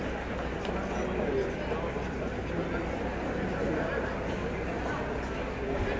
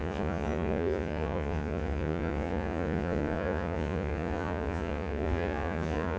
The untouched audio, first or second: first